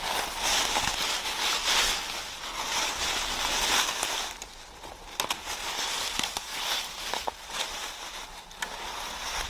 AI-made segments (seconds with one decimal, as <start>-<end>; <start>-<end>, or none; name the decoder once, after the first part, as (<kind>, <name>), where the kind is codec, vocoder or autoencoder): none